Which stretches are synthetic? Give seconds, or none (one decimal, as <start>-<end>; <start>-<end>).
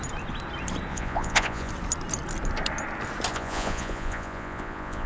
0.9-1.7; 3.3-5.1